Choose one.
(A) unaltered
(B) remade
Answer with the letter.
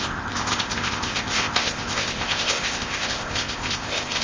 B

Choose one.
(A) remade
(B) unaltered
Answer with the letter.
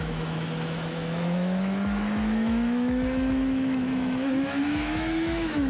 A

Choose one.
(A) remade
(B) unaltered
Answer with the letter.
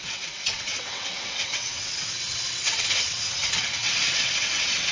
A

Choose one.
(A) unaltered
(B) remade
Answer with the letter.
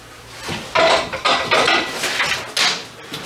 A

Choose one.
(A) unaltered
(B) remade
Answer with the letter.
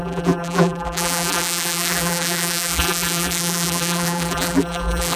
B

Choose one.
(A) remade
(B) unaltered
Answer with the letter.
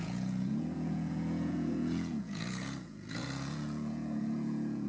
A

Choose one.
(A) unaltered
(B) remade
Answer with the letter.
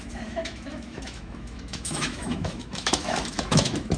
B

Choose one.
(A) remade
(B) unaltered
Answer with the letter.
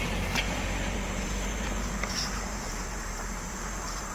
A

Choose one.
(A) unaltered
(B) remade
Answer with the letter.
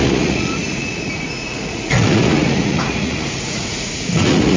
B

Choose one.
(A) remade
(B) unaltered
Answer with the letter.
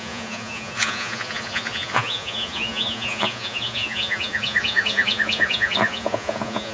A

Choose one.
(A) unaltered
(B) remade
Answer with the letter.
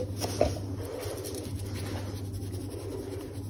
A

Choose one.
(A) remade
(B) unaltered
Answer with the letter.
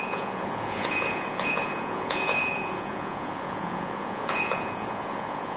A